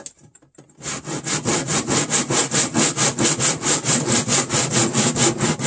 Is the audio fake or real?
real